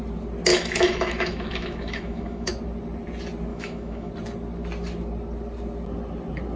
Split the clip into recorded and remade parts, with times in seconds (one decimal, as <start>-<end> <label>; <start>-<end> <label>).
0.0-0.5 recorded; 0.5-2.5 remade; 2.5-3.5 recorded; 3.5-4.1 remade; 4.1-6.6 recorded